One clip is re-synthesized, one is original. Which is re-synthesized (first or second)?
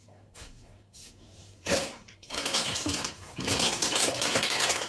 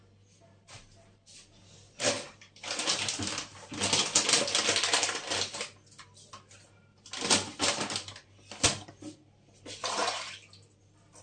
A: first